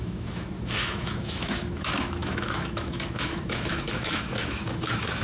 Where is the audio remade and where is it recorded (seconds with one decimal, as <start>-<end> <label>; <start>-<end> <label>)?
0.0-5.2 remade